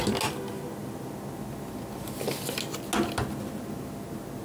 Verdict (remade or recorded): recorded